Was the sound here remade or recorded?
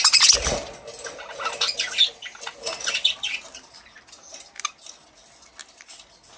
recorded